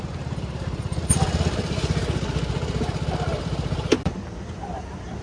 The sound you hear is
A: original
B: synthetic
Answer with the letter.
B